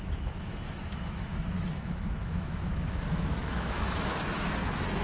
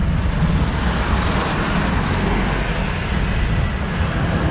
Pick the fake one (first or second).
first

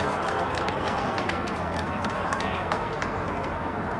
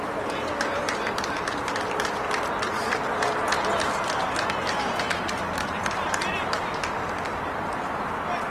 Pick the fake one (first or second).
first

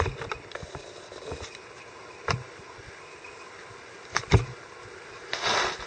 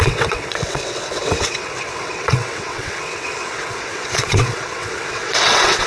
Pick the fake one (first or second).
second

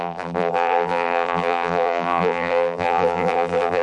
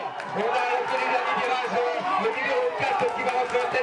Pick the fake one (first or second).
first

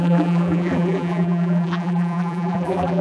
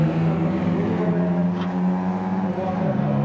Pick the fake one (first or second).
first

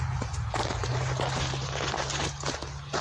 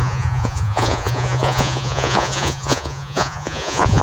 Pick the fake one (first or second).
second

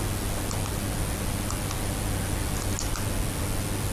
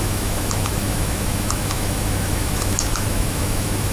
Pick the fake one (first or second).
second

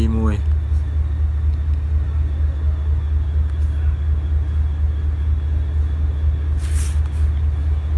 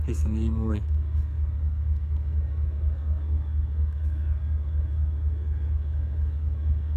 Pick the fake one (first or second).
second